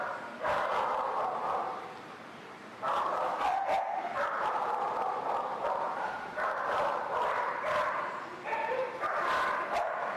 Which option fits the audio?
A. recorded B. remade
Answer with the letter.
B